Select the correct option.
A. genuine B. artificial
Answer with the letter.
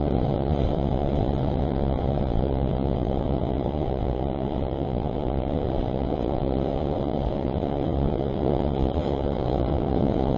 B